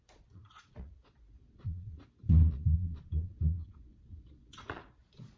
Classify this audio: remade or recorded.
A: remade